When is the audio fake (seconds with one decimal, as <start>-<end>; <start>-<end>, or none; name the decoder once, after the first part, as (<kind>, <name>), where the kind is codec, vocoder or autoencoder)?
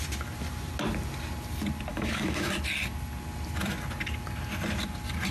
1.9-2.5 (autoencoder, DAC-VAE)